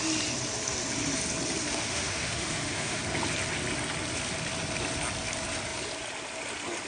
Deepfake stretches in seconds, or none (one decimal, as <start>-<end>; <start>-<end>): 1.7-3.0